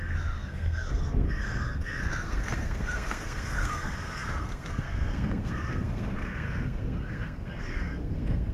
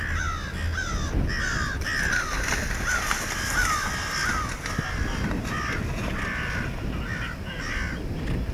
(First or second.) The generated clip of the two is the first